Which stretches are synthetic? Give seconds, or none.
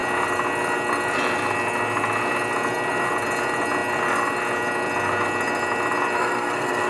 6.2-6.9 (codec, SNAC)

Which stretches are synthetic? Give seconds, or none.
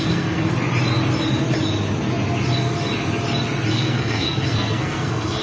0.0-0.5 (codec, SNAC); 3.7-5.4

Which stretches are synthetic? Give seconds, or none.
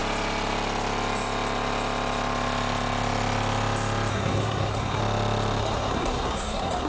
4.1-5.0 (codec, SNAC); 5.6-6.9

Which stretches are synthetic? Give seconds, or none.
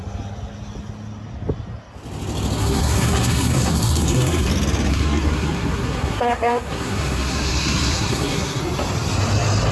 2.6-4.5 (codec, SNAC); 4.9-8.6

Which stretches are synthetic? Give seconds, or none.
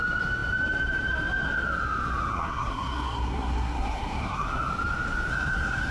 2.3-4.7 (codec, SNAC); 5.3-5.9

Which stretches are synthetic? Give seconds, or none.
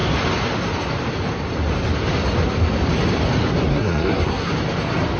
3.7-4.5 (codec, SNAC)